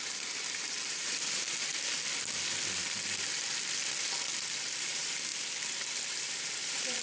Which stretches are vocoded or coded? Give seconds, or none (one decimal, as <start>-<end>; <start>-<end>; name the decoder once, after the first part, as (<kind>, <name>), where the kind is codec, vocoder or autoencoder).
0.0-1.7 (vocoder, BigVGAN v2); 4.5-5.3; 6.1-7.0